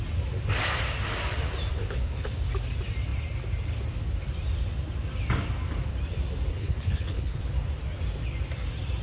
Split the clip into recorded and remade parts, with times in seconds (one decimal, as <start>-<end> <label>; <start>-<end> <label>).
0.0-1.7 recorded; 1.7-2.3 remade; 2.3-6.5 recorded; 6.5-7.4 remade; 7.4-9.0 recorded